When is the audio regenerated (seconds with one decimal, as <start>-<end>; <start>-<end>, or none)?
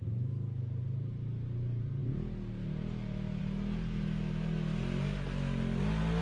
none